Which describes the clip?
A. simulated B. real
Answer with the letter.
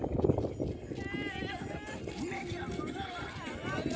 B